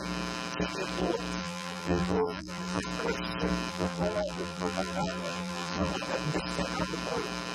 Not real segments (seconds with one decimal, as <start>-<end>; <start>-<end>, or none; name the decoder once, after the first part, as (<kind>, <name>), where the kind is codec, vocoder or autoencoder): 1.4-2.8 (vocoder, BigVGAN v2); 3.7-5.9